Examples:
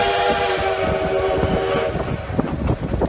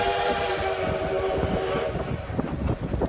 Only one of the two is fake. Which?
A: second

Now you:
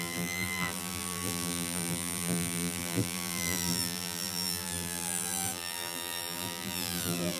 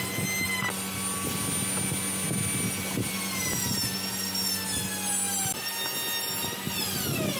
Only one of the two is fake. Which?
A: first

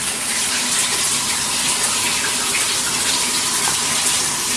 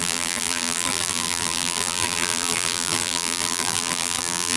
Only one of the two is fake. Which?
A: second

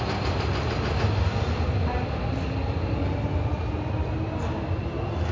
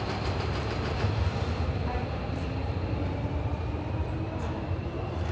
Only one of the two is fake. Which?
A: second